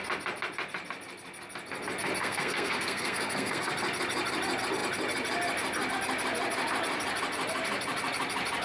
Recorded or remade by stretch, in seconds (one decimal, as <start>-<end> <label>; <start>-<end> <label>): 0.0-2.2 recorded; 2.2-3.7 remade; 3.7-8.6 recorded